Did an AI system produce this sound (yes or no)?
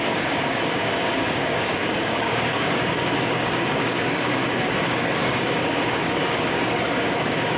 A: yes